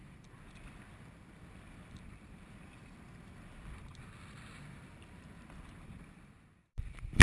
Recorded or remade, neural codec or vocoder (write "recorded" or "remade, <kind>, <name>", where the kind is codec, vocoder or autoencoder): remade, vocoder, BigVGAN v2